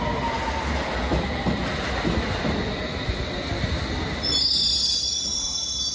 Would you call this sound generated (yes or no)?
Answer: no